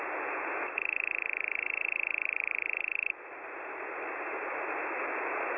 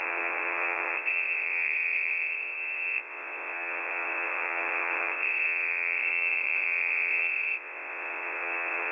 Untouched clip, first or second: first